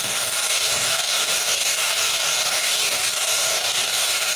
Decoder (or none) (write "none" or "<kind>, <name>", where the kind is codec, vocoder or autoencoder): codec, DAC